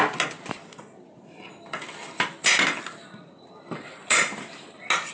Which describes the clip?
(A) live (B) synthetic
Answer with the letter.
A